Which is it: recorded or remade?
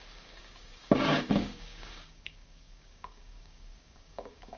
remade